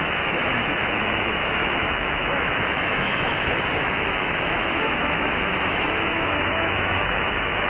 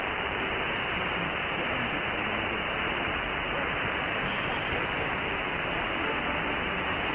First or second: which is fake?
first